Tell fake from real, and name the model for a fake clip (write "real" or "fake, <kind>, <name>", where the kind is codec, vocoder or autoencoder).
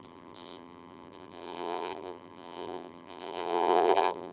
fake, vocoder, BigVGAN v2